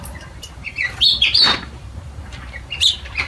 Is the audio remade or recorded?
remade